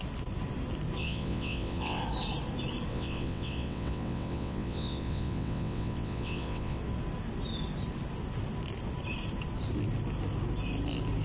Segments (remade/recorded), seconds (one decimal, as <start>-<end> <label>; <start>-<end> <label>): 0.0-1.0 recorded; 1.0-2.0 remade; 2.0-2.9 recorded; 2.9-6.8 remade; 6.8-11.2 recorded